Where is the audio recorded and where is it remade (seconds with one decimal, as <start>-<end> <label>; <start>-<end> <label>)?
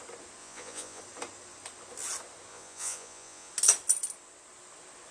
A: 0.0-0.4 recorded; 0.4-1.0 remade; 1.0-2.5 recorded; 2.5-3.5 remade; 3.5-5.1 recorded